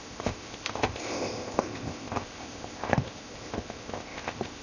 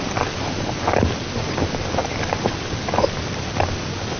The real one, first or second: second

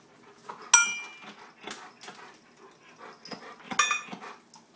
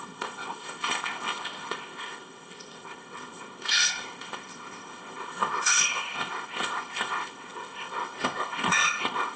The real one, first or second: first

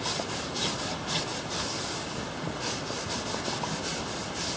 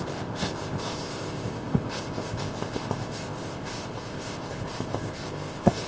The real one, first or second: first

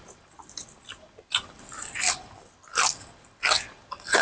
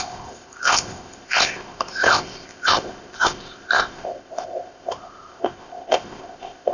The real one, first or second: first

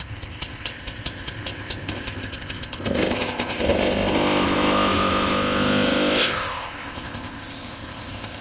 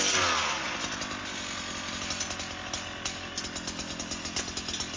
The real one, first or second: second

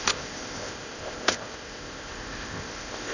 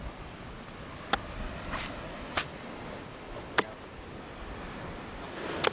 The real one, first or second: second